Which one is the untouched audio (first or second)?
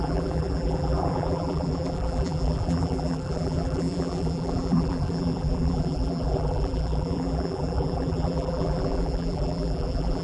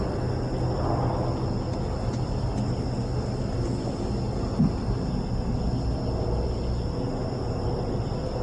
second